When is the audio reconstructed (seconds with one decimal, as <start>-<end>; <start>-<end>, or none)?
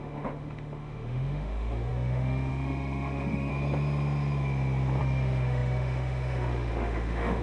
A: 0.0-3.5; 5.0-7.4